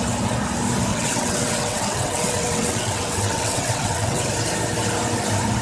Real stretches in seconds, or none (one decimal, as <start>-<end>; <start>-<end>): 0.0-0.9; 4.3-5.6